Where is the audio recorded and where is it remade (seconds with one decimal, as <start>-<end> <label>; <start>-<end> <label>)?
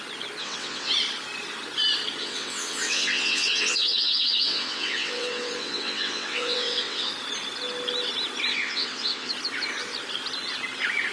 0.0-0.4 recorded; 0.4-0.9 remade; 0.9-2.2 recorded; 2.2-7.1 remade; 7.1-8.5 recorded; 8.5-9.3 remade; 9.3-11.1 recorded